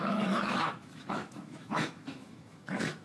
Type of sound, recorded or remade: remade